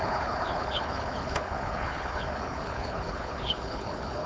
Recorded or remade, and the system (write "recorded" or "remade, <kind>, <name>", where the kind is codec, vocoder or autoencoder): remade, codec, HILCodec